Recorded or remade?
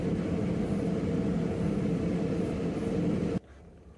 recorded